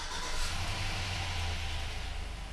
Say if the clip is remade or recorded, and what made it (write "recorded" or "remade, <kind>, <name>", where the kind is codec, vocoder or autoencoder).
recorded